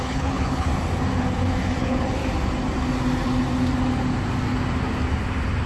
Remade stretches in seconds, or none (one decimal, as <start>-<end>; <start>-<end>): 0.0-0.7; 1.8-2.2